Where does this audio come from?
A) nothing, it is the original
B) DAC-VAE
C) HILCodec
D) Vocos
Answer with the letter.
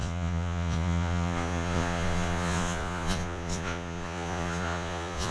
D